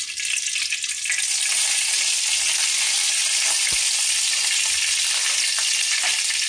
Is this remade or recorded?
recorded